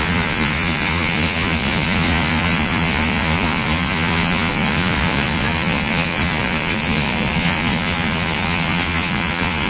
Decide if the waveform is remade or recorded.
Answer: remade